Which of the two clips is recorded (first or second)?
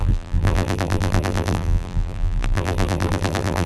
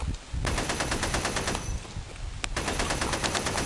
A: second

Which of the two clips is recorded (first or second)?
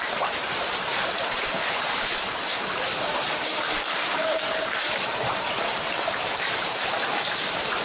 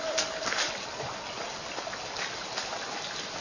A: second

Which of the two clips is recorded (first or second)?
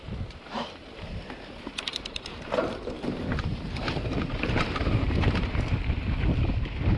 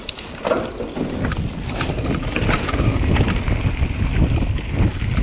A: second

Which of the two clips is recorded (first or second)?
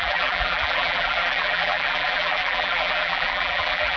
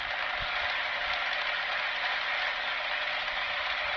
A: second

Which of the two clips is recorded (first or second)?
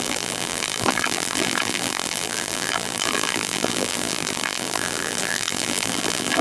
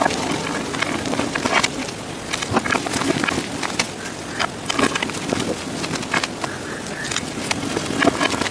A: second